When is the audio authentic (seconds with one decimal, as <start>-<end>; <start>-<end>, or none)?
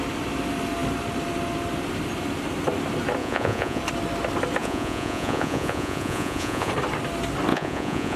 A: 0.0-3.2; 3.8-4.6; 6.7-7.5